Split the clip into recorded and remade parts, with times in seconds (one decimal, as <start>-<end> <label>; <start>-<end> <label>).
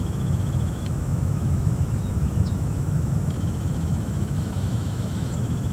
0.0-5.7 remade